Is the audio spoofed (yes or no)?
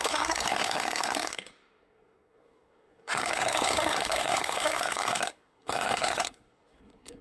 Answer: yes